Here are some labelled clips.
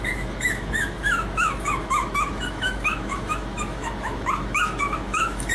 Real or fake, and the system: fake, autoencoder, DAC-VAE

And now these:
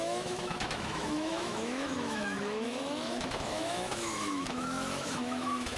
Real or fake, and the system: fake, autoencoder, DAC-VAE